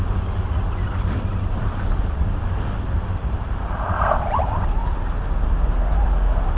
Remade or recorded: recorded